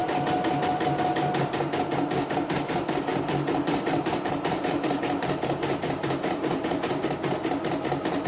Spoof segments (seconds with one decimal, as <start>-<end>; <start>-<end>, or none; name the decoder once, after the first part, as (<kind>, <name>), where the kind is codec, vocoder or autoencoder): 3.1-6.8 (vocoder, BigVGAN v2)